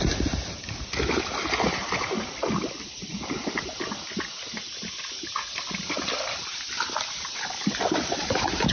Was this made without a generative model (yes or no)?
yes